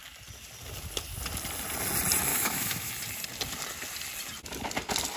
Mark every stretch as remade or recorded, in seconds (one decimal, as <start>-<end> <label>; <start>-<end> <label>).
0.0-2.3 recorded; 2.3-2.9 remade; 2.9-5.2 recorded